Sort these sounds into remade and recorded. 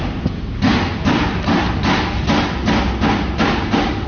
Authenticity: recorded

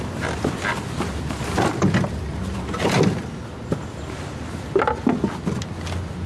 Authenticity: recorded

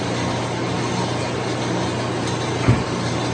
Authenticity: recorded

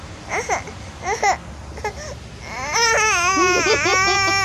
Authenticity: recorded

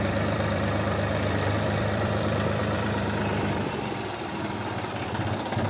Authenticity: remade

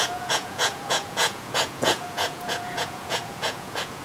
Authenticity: remade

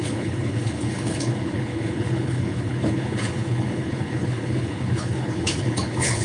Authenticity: remade